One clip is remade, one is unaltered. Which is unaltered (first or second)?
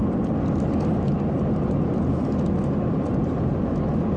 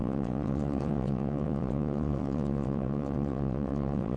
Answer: first